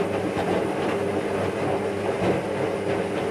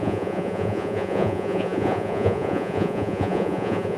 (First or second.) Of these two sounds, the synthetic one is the second